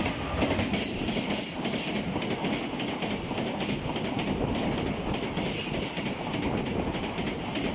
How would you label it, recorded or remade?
recorded